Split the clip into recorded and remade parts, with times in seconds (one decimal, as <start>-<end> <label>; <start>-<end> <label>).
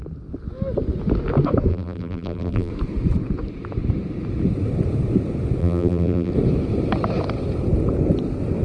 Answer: 0.0-1.7 recorded; 1.7-2.7 remade; 2.7-5.6 recorded; 5.6-6.3 remade; 6.3-8.6 recorded